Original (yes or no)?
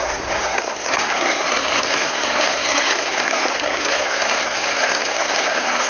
no